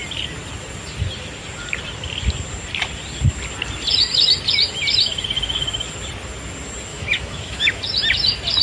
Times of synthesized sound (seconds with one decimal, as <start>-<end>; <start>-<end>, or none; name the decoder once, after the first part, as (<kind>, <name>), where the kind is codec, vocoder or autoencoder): 6.9-7.8 (autoencoder, DAC-VAE)